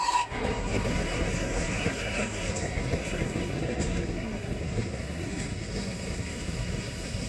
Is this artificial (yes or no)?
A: yes